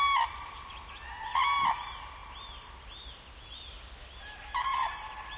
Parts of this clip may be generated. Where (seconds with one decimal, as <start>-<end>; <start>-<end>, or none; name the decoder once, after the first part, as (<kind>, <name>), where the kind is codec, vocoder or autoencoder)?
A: none